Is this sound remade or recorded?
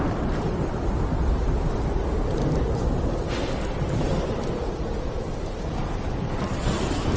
recorded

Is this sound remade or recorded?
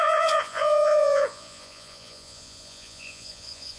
remade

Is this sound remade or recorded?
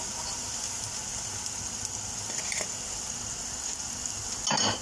recorded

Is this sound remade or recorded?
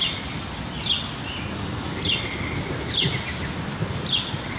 recorded